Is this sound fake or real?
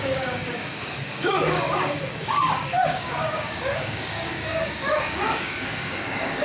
fake